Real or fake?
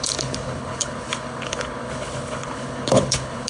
fake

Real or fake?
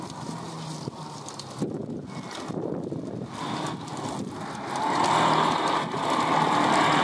real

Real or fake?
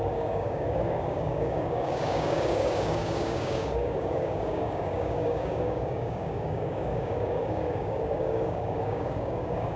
fake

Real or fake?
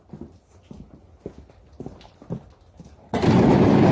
real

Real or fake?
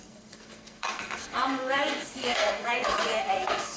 fake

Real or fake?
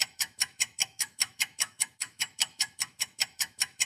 fake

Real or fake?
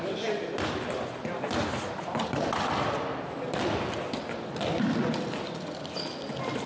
real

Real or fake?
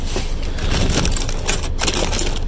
real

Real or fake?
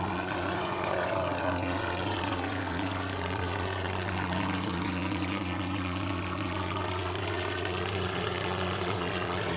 fake